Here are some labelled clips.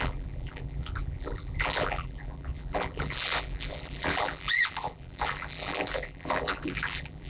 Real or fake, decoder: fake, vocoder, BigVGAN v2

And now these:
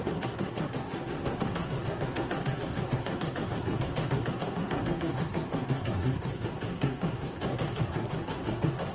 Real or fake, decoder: fake, codec, SNAC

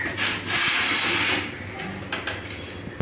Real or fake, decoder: real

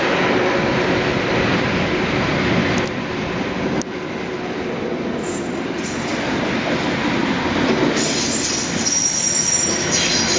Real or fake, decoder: real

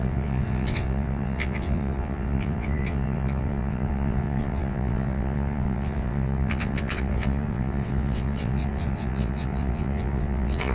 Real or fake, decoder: fake, vocoder, WaveNeXt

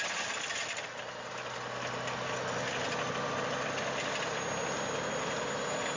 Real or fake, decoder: real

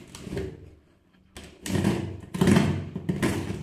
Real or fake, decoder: real